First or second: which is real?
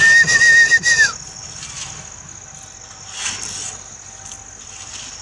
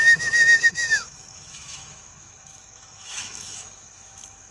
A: first